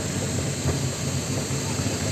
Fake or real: real